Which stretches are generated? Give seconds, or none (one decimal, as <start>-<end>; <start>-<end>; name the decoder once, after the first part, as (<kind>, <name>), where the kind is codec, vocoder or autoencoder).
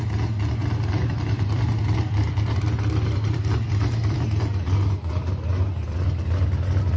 0.6-4.8 (vocoder, BigVGAN v2)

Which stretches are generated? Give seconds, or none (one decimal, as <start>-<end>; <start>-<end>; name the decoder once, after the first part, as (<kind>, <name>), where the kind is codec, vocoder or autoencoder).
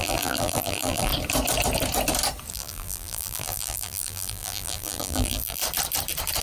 0.0-1.1 (vocoder, BigVGAN v2); 2.5-5.6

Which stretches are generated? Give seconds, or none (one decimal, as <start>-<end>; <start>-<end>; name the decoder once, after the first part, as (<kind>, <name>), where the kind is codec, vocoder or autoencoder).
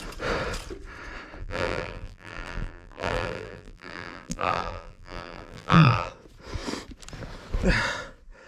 1.4-6.1 (vocoder, BigVGAN v2)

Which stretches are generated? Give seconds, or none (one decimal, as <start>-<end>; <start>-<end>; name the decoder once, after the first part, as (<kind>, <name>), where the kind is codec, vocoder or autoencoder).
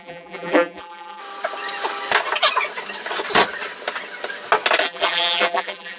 0.0-1.2 (vocoder, BigVGAN v2); 4.8-6.0